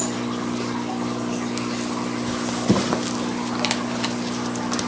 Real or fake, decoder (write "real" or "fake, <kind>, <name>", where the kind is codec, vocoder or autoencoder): real